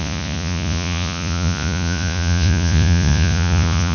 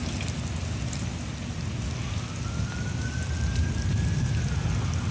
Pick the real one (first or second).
second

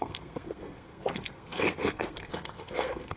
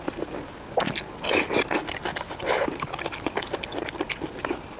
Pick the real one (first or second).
second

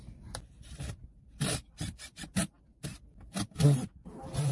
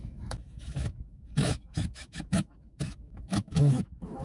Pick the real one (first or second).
first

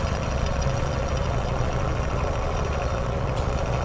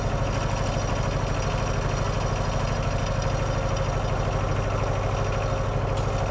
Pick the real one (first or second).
second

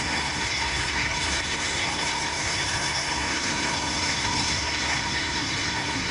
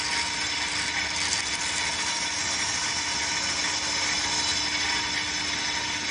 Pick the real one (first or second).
second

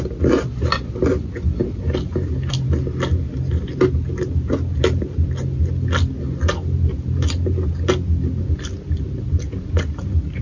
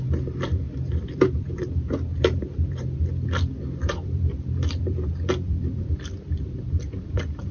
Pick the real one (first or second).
first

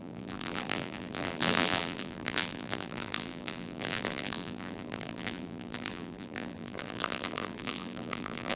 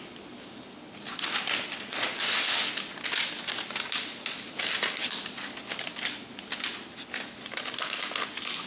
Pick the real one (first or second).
second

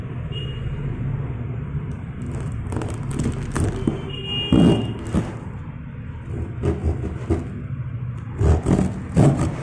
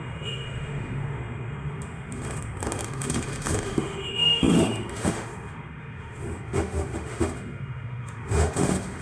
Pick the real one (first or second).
first